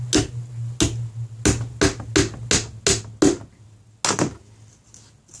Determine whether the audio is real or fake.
real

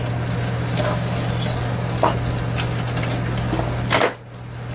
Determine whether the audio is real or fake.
real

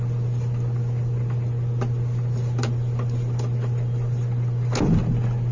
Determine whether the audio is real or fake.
real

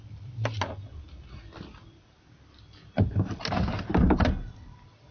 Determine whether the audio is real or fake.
real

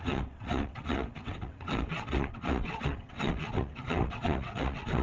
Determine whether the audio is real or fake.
fake